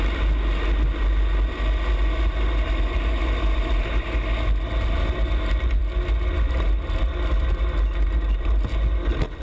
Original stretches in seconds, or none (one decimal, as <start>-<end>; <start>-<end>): 0.0-9.4